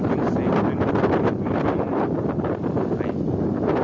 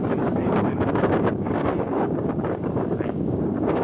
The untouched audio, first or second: first